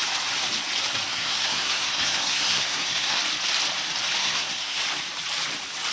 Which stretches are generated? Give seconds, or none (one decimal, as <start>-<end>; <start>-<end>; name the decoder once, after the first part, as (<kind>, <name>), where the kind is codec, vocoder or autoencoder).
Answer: 1.1-3.2 (codec, SNAC); 4.2-4.8